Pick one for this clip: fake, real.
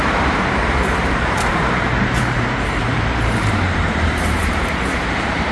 fake